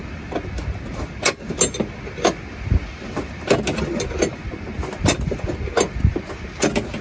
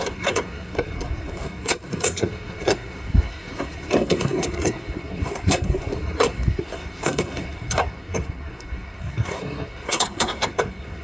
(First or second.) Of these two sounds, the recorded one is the first